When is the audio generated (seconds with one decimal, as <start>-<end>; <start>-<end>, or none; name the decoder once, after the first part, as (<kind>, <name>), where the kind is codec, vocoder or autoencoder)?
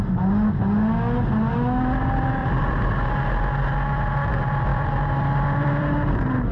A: 2.4-3.1 (vocoder, BigVGAN v2); 4.7-6.1